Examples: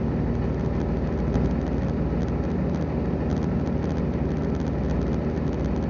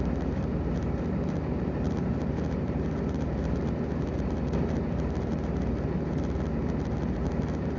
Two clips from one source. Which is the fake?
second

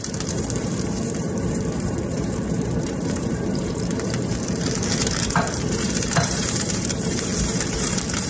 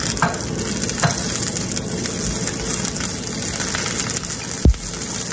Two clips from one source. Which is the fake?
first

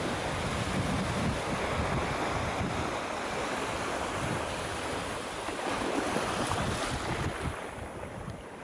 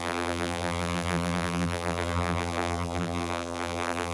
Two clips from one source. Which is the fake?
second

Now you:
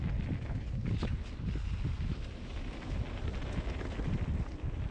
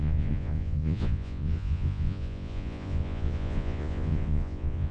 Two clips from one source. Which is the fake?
second